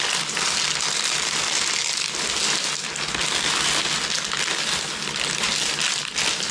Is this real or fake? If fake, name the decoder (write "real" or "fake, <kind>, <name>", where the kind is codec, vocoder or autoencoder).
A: real